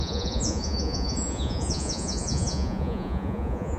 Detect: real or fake fake